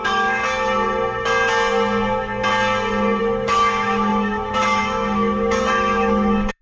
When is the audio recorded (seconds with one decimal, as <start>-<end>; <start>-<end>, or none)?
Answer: 0.4-3.2

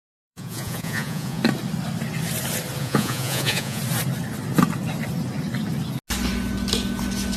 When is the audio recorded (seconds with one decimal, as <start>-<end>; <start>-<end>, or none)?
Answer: 1.4-2.8; 3.8-7.4

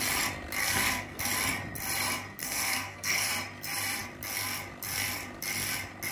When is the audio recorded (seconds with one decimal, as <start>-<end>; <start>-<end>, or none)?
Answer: 0.0-0.6; 1.2-2.4; 3.3-6.1